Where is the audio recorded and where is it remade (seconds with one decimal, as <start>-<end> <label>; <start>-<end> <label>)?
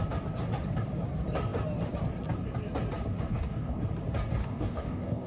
0.0-3.3 recorded; 3.3-3.8 remade; 3.8-4.4 recorded; 4.4-5.3 remade